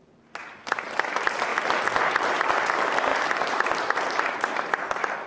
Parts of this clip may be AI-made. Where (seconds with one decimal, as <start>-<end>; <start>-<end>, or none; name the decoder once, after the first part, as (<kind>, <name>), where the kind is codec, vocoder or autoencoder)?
none